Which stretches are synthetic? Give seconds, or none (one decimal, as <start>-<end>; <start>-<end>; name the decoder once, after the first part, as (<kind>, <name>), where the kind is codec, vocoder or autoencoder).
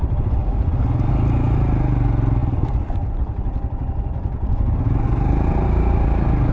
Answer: none